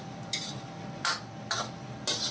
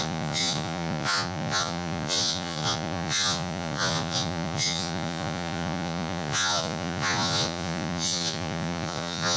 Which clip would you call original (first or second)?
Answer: first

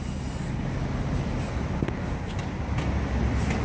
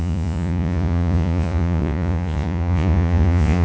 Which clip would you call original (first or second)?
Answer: first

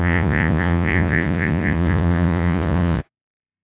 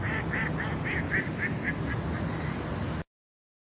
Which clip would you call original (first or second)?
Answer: second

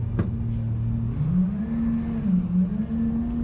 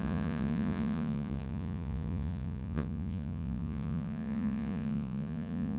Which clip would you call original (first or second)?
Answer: first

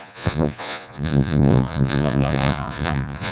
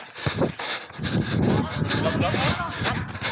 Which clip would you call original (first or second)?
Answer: second